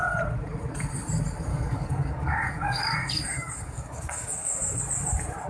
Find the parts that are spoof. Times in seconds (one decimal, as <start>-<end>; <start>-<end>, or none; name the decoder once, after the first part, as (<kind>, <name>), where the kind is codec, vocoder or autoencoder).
1.5-4.8 (codec, DAC)

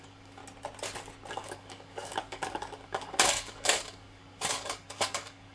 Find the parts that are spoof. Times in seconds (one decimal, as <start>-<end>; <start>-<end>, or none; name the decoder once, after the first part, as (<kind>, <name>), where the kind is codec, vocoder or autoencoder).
0.0-0.4 (codec, DAC); 1.3-5.5